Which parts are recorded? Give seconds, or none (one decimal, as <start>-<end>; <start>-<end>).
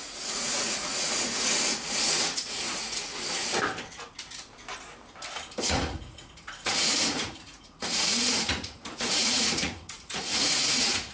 3.1-5.6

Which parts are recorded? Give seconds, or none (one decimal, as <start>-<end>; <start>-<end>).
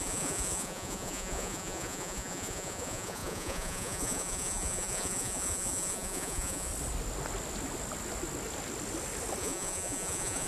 6.7-9.4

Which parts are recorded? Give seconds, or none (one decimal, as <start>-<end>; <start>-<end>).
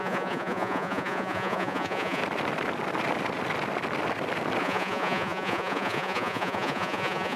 2.2-4.6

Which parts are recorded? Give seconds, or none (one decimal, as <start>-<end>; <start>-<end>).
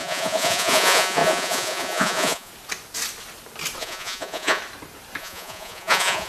2.5-3.8; 4.6-5.2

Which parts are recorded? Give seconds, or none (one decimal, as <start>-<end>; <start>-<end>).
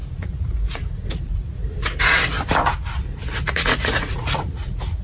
1.6-3.5